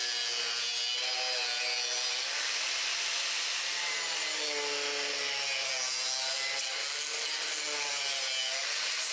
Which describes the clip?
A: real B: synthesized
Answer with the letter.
A